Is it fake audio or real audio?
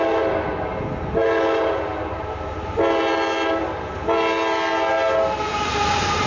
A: real